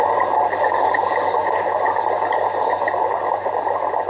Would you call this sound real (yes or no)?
yes